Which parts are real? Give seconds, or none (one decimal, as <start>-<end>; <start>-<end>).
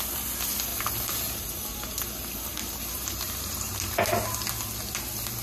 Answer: 0.0-0.7; 3.9-5.4